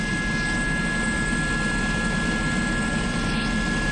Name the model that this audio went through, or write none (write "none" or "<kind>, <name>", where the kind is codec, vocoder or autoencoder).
none